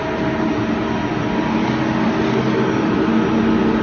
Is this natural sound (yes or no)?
yes